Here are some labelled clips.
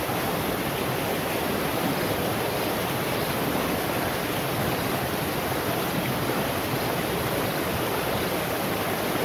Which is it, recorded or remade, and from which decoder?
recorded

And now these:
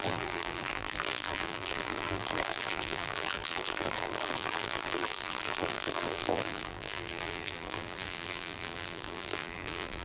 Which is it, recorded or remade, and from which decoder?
remade, vocoder, BigVGAN v2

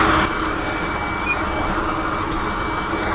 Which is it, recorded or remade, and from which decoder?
recorded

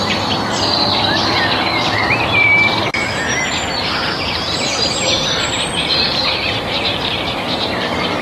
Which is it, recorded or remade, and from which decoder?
remade, vocoder, BigVGAN v2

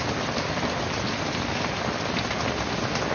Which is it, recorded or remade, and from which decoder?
recorded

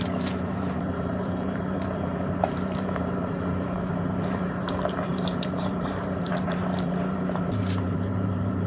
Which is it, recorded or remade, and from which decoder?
remade, vocoder, BigVGAN v2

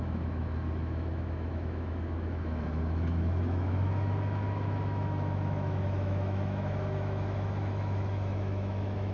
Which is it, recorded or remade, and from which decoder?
remade, autoencoder, DAC-VAE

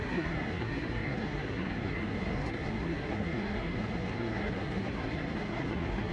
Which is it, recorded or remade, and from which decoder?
remade, codec, SNAC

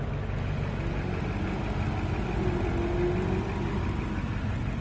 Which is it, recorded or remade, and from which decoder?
recorded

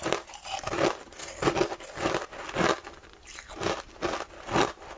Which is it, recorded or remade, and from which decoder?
recorded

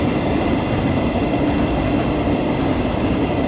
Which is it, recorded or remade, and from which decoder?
recorded